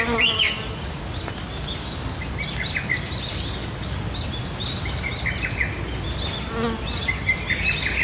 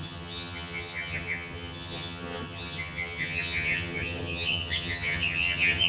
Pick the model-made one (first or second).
second